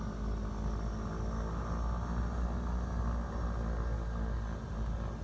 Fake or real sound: real